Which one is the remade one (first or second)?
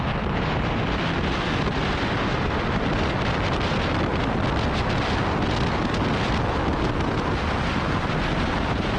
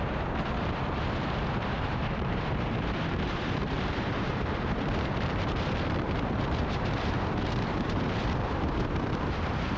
second